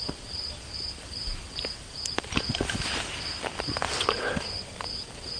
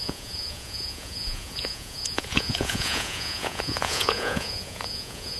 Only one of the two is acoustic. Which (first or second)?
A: first